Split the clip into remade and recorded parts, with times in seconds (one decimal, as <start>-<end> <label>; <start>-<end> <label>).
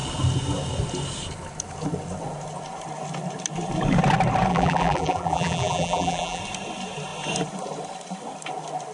0.0-4.5 recorded; 4.5-6.4 remade; 6.4-8.9 recorded